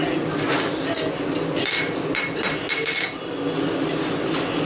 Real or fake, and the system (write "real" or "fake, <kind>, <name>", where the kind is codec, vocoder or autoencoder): real